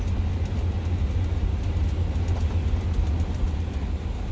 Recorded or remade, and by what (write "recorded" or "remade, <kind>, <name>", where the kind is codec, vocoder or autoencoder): recorded